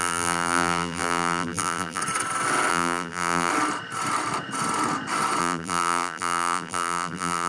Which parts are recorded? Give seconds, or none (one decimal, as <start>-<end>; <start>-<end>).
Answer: 2.0-2.7; 3.5-5.4